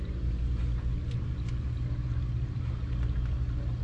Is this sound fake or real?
real